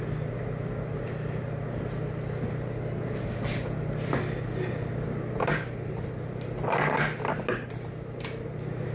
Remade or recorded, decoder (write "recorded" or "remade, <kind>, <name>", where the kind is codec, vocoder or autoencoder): recorded